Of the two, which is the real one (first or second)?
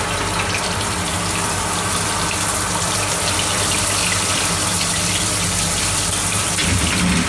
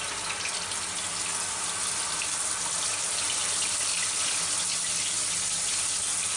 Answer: second